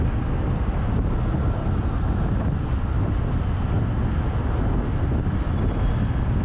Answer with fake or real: real